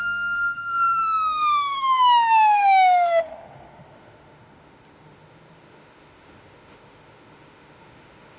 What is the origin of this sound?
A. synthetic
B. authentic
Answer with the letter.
A